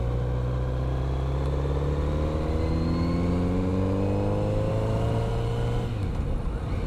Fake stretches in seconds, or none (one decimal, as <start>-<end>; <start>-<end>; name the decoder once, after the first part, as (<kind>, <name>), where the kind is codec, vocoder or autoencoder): none